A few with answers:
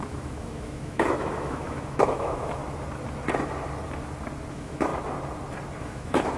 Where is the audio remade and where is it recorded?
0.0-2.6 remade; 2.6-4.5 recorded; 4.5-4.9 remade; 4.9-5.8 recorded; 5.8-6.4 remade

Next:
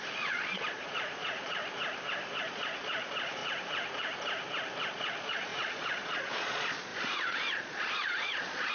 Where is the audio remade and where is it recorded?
0.0-1.6 remade; 1.6-2.4 recorded; 2.4-3.4 remade; 3.4-4.9 recorded; 4.9-8.7 remade

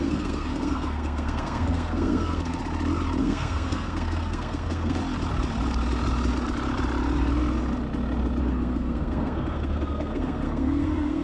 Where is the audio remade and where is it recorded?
0.0-2.6 remade; 2.6-3.2 recorded; 3.2-5.0 remade; 5.0-8.4 recorded; 8.4-11.2 remade